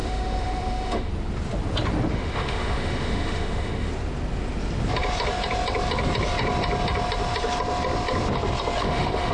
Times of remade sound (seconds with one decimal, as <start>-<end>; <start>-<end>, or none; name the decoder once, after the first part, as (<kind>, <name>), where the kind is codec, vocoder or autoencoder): 0.0-1.1 (autoencoder, DAC-VAE); 2.1-3.9; 8.8-9.3